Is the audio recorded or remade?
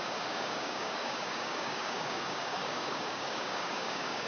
remade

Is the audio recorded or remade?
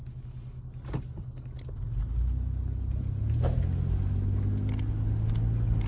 recorded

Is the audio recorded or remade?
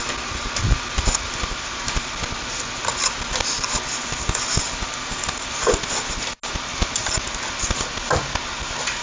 recorded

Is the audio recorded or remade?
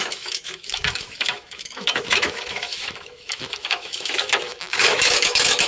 remade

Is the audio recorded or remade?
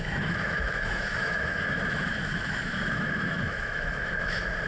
remade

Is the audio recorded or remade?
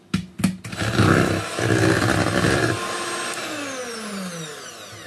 recorded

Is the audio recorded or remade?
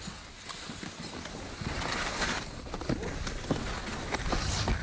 recorded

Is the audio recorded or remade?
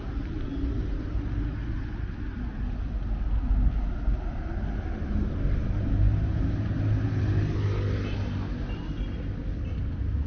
recorded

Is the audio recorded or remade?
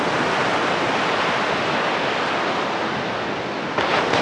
recorded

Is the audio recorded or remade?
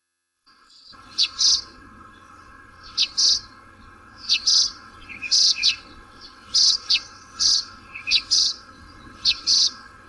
remade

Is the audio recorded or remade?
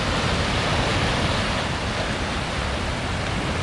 recorded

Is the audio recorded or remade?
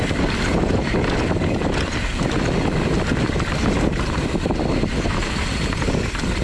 recorded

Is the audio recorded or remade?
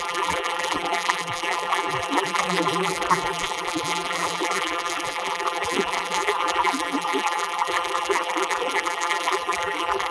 remade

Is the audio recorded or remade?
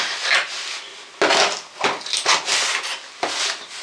recorded